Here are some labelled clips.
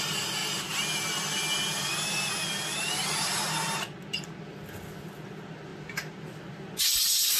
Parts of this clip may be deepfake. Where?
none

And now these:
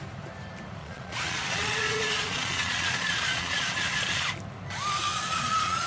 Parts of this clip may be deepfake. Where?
0.8-4.3; 5.1-5.9

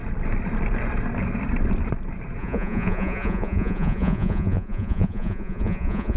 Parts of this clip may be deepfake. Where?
2.4-6.2